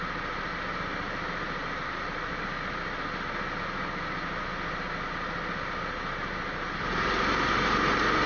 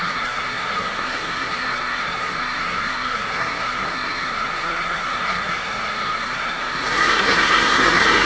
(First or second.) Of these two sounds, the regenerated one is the second